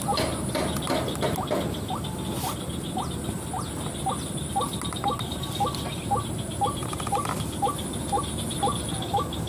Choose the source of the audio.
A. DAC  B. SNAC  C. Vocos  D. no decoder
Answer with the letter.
D